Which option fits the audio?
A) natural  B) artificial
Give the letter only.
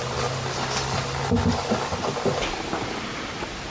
A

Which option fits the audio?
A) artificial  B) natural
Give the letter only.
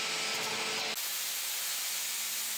B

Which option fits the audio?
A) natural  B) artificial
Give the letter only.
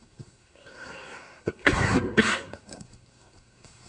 B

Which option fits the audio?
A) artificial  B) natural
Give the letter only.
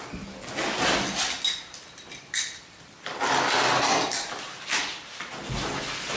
B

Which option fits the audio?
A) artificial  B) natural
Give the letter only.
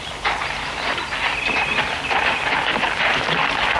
B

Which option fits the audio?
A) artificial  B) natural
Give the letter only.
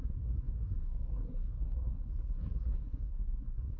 A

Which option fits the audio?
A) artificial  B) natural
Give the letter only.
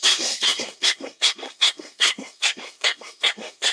A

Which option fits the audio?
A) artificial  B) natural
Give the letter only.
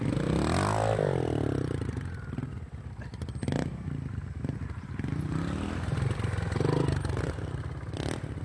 B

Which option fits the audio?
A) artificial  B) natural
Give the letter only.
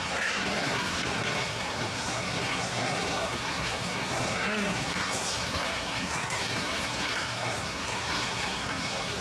A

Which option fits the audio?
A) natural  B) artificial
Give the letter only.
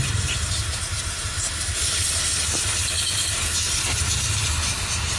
A